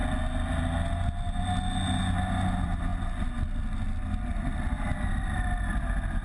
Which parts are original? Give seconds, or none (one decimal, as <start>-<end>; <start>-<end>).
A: 0.0-6.2